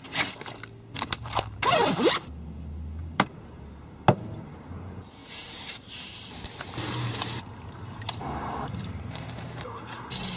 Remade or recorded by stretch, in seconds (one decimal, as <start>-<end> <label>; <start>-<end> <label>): 0.0-3.0 recorded; 3.0-4.8 remade; 4.8-5.2 recorded; 5.2-10.4 remade